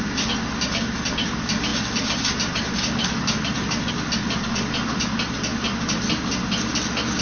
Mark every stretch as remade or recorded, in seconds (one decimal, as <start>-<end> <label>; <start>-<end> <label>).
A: 0.0-7.2 recorded